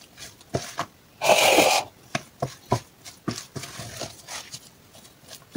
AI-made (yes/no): no